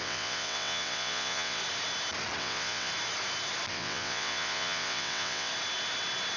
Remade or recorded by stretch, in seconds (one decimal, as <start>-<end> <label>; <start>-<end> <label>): 0.0-1.6 remade; 1.6-2.4 recorded; 2.4-2.9 remade; 2.9-3.7 recorded; 3.7-5.5 remade; 5.5-6.4 recorded